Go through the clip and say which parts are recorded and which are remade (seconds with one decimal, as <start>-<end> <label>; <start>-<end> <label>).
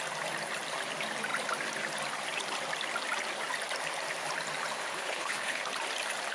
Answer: 0.0-4.8 recorded; 4.8-5.6 remade; 5.6-6.3 recorded